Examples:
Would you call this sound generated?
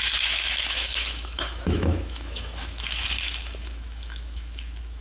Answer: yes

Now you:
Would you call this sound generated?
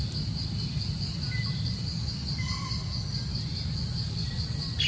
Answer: no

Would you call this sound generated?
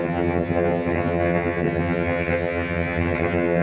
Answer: yes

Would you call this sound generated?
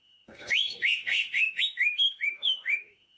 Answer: yes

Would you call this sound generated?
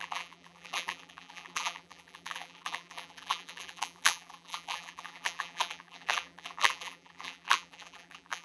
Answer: yes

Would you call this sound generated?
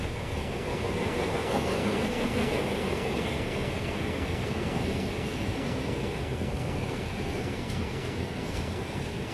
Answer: yes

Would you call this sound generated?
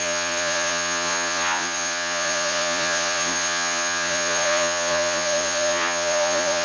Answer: yes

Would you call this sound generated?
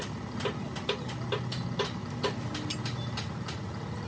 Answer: no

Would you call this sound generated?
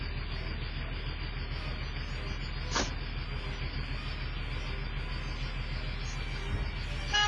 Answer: no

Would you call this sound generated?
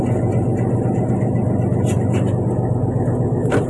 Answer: no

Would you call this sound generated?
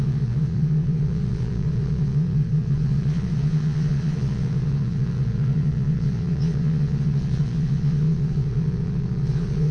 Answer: yes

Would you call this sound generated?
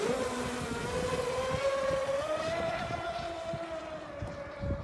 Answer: no